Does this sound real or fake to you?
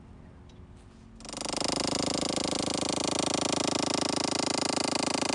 real